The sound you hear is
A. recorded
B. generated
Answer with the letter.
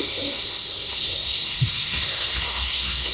B